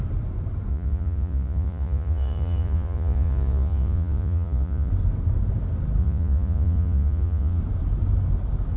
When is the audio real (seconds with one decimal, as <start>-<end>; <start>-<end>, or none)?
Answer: 0.0-0.7; 4.9-6.0; 7.6-8.8